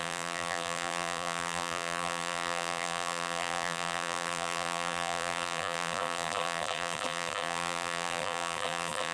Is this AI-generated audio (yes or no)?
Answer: yes